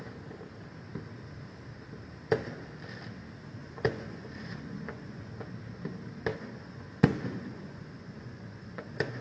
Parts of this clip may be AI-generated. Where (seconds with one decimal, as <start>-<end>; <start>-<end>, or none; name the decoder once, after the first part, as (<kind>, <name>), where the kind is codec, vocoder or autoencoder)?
3.6-5.3 (vocoder, Vocos); 6.3-9.2

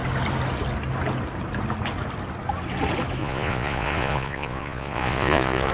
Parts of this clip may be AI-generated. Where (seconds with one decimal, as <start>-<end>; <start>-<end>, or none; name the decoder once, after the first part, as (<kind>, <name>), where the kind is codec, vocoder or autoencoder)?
3.2-5.7 (vocoder, Vocos)

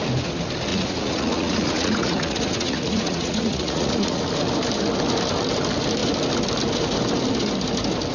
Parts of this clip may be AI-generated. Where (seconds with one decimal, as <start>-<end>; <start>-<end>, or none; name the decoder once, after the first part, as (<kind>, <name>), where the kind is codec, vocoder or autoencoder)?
0.7-4.2 (vocoder, Vocos)